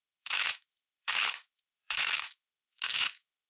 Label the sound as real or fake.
fake